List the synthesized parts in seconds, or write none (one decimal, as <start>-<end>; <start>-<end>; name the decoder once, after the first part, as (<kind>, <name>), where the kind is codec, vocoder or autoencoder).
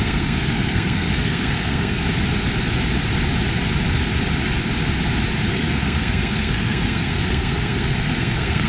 0.0-2.0 (codec, SNAC); 5.5-8.7